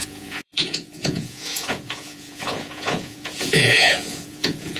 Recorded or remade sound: remade